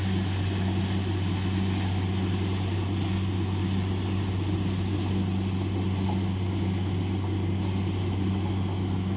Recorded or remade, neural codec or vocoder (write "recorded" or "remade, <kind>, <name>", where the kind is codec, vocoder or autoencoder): recorded